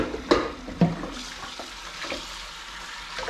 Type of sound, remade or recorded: recorded